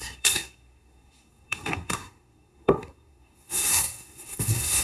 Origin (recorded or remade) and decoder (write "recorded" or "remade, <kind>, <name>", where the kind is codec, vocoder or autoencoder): remade, codec, SNAC